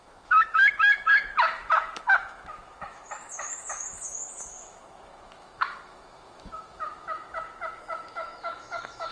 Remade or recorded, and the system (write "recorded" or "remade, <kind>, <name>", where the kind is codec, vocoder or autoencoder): remade, autoencoder, DAC-VAE